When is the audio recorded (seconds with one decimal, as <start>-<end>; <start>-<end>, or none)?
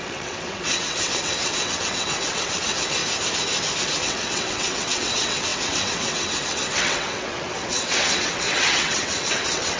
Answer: 3.0-3.8